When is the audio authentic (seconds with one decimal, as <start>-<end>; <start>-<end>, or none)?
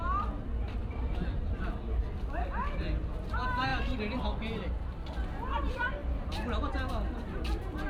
0.0-0.8; 1.8-7.9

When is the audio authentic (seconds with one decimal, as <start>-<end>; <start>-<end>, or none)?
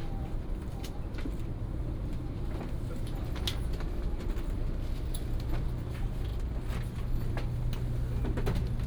3.2-8.9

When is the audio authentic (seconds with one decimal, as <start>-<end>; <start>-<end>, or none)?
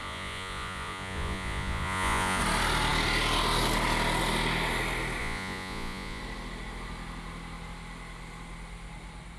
2.4-5.2; 6.2-9.4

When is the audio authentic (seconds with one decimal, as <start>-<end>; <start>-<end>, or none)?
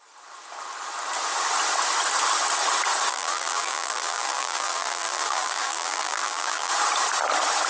0.0-3.1; 6.7-7.7